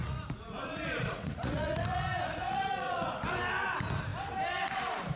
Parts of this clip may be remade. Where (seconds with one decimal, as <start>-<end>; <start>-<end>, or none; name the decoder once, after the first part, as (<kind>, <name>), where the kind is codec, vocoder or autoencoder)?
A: 0.0-3.1 (vocoder, Vocos)